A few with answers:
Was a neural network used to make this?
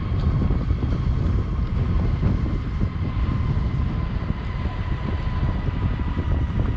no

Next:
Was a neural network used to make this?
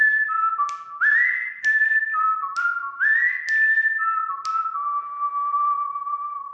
no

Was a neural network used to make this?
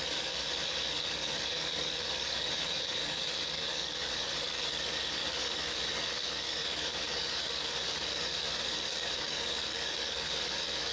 yes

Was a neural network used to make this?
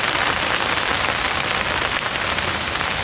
yes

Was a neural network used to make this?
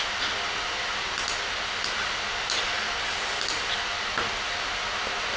no